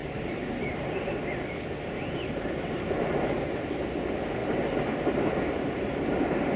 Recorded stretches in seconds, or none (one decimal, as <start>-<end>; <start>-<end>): 4.0-4.4